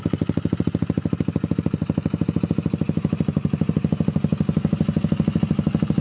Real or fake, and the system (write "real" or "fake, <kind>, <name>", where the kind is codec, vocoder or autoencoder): real